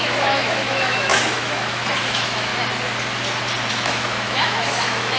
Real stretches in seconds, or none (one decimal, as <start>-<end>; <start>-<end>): 2.5-3.7